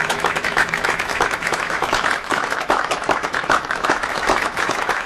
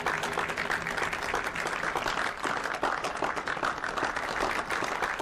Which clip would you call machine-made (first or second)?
first